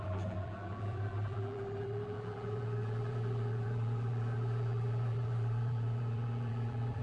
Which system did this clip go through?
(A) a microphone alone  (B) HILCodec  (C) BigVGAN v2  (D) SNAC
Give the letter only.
C